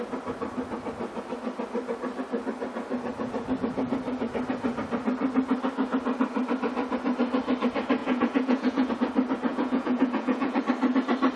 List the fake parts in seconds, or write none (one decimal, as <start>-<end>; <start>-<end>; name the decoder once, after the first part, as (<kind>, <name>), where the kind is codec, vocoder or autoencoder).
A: 8.0-8.9 (vocoder, Vocos); 9.5-10.6